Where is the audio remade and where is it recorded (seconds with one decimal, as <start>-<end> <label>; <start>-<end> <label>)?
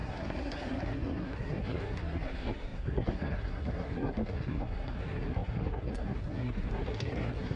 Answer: 0.0-7.6 remade